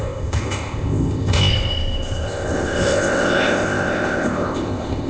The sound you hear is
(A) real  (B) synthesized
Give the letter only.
B